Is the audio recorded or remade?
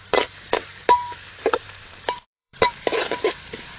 remade